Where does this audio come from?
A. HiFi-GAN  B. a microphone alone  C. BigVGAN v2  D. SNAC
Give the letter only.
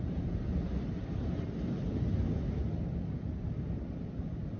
B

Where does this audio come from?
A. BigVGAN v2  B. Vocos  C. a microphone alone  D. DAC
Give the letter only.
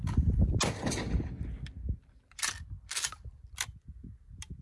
C